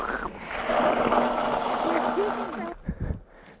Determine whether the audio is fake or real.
real